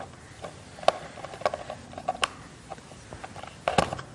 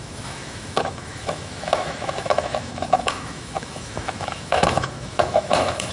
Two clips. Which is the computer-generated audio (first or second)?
second